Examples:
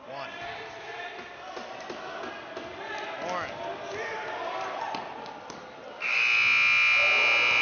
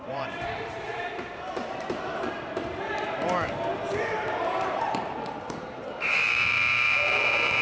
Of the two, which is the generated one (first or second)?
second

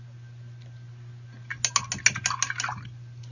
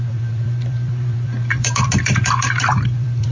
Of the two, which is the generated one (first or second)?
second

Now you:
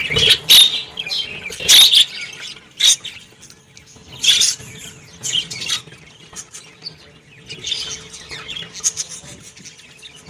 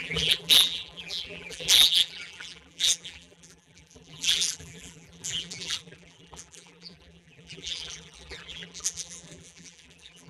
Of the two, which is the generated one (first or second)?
second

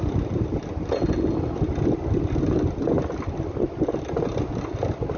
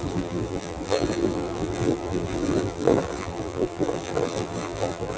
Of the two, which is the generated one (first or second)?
second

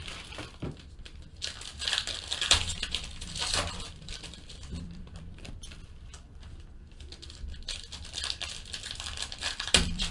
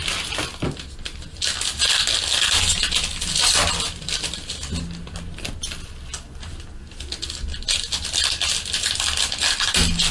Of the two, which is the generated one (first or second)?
first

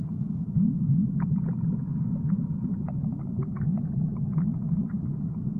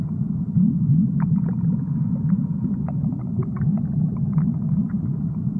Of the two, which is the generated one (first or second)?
second